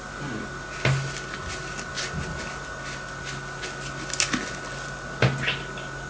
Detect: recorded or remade recorded